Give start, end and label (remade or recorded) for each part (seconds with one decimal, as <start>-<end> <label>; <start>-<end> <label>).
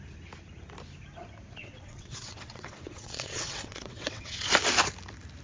0.0-1.6 recorded; 1.6-4.5 remade; 4.5-5.4 recorded